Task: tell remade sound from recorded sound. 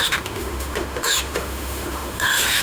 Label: remade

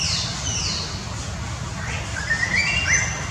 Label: recorded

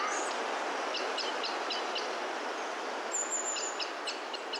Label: recorded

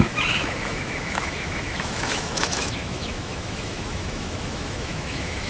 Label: remade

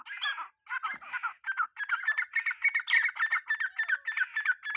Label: recorded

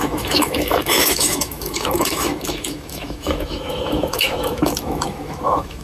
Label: remade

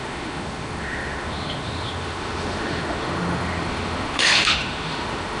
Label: remade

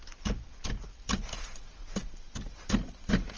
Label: recorded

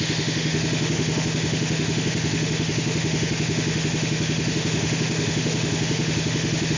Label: remade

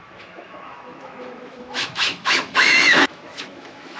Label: remade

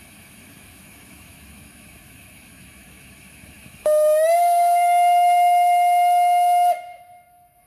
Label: remade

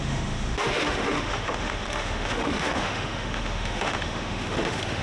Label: remade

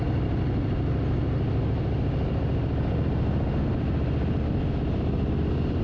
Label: recorded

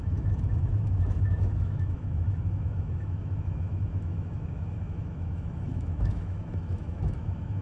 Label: remade